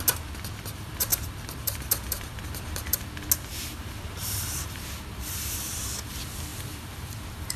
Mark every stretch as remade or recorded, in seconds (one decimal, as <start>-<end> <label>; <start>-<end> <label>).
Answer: 0.0-1.1 recorded; 1.1-3.1 remade; 3.1-3.5 recorded; 3.5-6.1 remade; 6.1-6.5 recorded; 6.5-7.6 remade